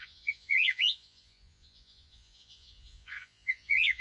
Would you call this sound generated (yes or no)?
yes